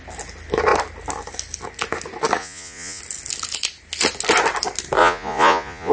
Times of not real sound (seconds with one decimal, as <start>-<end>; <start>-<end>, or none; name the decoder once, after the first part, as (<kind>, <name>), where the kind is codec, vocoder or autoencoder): 2.4-3.0 (vocoder, Vocos); 5.0-5.9